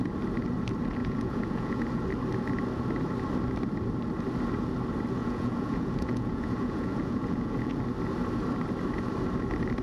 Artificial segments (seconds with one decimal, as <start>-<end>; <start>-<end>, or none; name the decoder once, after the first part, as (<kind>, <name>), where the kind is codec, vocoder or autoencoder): 1.0-2.0 (vocoder, Vocos); 5.2-7.8